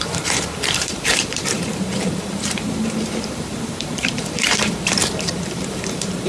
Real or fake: fake